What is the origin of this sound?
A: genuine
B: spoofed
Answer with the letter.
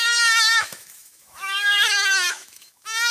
B